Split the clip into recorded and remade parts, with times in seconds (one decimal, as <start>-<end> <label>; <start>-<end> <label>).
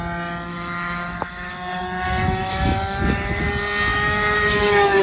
0.0-0.5 recorded; 0.5-3.5 remade; 3.5-3.9 recorded; 3.9-5.0 remade